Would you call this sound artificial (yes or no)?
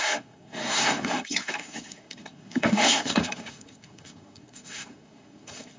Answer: yes